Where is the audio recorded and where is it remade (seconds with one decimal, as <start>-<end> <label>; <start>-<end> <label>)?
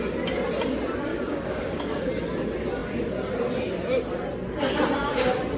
0.0-1.1 recorded; 1.1-2.1 remade; 2.1-5.6 recorded